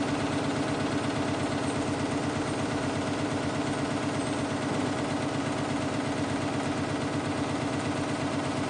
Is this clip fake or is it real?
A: fake